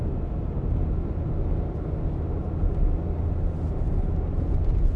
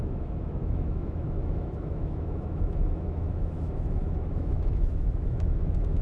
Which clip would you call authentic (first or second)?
first